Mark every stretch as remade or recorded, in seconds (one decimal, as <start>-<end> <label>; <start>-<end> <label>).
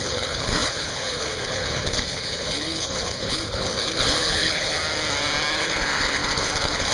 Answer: 0.0-4.8 remade; 4.8-5.6 recorded; 5.6-6.9 remade